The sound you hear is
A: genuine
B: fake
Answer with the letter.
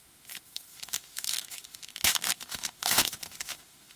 B